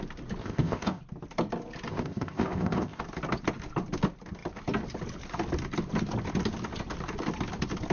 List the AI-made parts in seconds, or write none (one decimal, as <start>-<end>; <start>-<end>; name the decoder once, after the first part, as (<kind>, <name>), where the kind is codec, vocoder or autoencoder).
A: 0.4-1.0 (codec, ZipCodec); 1.9-3.0